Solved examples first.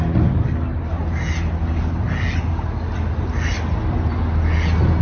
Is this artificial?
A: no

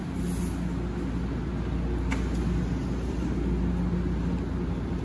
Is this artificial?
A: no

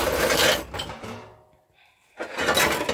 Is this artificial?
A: no